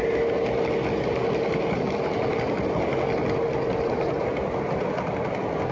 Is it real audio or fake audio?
real